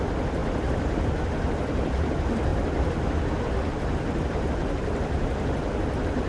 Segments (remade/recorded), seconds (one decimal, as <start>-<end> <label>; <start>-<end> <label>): 0.0-6.3 recorded